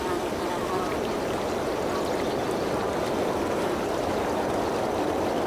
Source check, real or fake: real